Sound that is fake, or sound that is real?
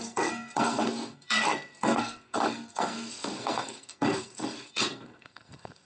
fake